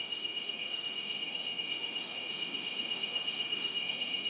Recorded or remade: remade